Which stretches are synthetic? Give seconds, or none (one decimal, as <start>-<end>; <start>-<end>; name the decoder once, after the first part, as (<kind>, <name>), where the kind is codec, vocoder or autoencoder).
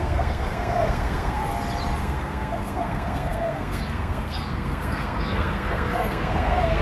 0.0-1.4 (codec, SNAC); 2.0-6.8